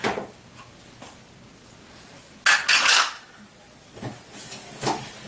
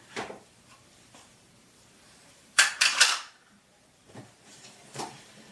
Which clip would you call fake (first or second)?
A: second